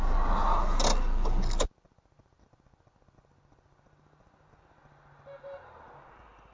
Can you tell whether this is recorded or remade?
recorded